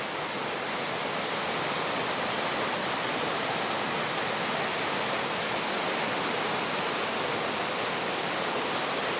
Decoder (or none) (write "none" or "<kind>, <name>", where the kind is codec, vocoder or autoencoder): none